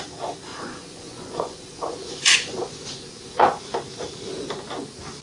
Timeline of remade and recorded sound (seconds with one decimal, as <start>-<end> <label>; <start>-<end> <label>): 0.0-0.5 recorded; 0.5-3.6 remade; 3.6-5.2 recorded